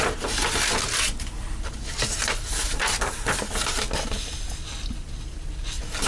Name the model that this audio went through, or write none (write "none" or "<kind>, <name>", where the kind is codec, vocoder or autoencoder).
none